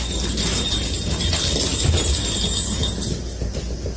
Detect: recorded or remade recorded